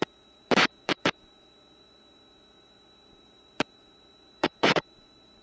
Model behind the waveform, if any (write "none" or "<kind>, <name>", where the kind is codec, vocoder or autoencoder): vocoder, BigVGAN v2